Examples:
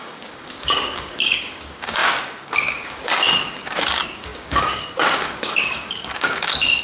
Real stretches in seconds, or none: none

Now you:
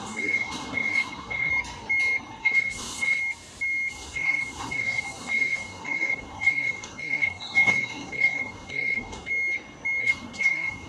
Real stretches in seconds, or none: 1.5-2.4; 3.2-3.9; 9.3-10.0

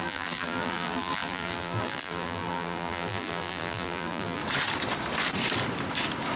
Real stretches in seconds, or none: 4.4-6.4

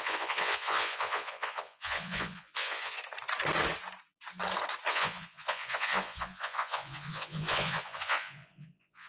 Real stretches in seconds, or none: 3.0-4.9